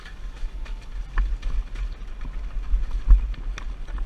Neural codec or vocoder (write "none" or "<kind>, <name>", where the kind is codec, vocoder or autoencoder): none